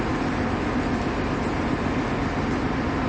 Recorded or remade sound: recorded